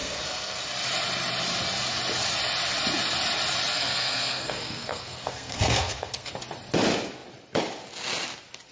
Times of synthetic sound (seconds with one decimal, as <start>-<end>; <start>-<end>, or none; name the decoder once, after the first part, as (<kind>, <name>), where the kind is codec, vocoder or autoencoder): 0.0-0.6 (codec, SNAC); 3.7-6.3